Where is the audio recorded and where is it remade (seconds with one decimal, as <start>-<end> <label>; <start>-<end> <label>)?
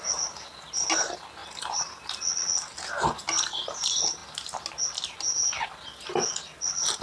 0.0-7.0 recorded